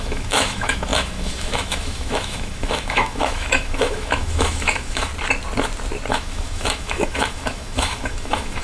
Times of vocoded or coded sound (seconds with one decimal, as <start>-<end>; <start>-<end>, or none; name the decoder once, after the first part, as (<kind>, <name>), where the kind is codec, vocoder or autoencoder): 0.0-5.1 (autoencoder, DAC-VAE); 6.1-8.6